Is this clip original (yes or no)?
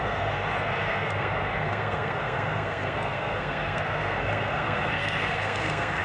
no